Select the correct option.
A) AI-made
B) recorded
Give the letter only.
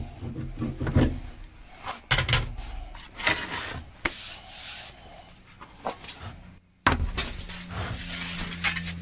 B